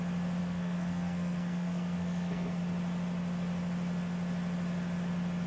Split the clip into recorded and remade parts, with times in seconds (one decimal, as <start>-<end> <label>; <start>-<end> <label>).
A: 0.0-0.4 recorded; 0.4-2.6 remade; 2.6-5.5 recorded